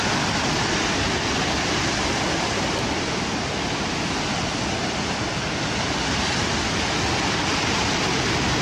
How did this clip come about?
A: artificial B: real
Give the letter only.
B